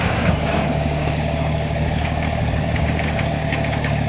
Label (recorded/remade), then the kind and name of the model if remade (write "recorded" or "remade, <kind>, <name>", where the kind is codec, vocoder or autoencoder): remade, codec, DAC